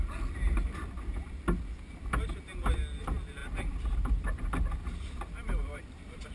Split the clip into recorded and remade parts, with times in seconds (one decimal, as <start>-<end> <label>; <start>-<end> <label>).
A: 0.0-3.4 recorded; 3.4-6.3 remade